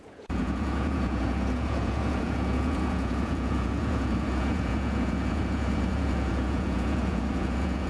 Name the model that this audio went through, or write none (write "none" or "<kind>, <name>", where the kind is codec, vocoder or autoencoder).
vocoder, Vocos